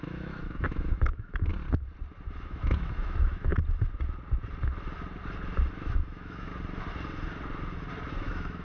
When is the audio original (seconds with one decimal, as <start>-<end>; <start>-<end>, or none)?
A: 1.5-2.4; 3.5-5.7; 6.5-8.1